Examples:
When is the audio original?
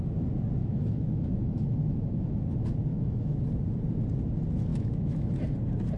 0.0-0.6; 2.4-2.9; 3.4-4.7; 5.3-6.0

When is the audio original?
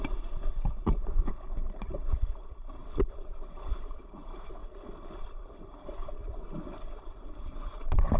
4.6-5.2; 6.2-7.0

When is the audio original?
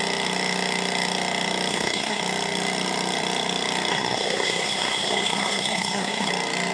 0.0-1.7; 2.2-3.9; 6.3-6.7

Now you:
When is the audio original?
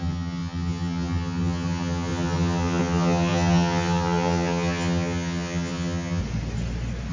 6.2-7.1